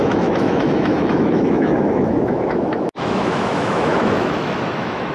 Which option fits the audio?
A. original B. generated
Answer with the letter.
B